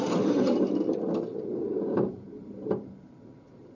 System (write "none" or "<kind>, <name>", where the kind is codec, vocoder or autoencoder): vocoder, BigVGAN v2